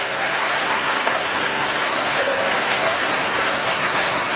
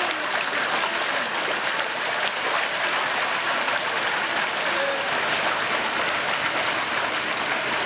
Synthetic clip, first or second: first